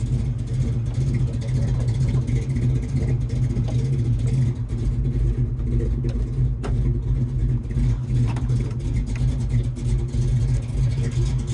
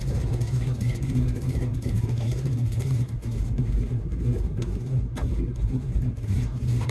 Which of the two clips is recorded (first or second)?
first